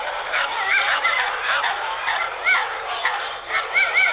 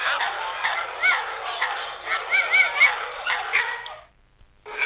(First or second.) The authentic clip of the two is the second